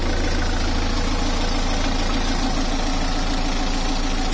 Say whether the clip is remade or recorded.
recorded